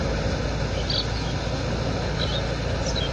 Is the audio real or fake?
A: real